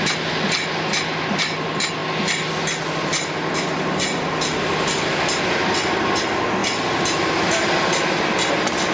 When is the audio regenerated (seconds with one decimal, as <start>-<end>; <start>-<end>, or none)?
none